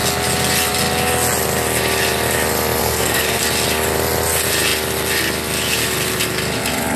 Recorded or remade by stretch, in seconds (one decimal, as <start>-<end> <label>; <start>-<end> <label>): 0.0-2.8 recorded; 2.8-3.4 remade; 3.4-7.0 recorded